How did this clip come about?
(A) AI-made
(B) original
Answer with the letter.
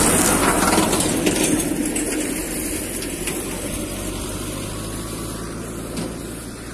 B